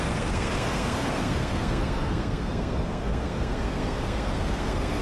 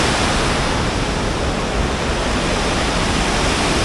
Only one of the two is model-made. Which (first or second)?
first